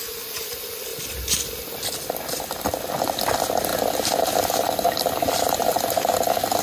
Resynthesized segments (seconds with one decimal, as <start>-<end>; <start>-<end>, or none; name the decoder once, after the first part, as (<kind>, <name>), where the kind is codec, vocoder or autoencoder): none